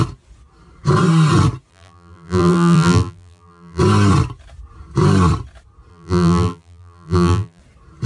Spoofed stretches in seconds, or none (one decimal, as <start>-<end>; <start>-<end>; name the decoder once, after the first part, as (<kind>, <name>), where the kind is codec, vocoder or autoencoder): 1.7-3.8 (vocoder, BigVGAN v2); 5.9-7.6